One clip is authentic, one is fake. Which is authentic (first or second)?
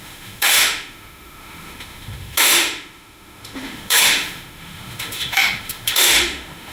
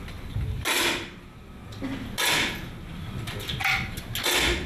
second